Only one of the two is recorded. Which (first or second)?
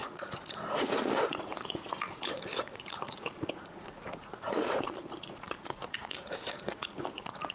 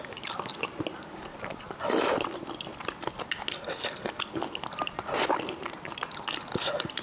second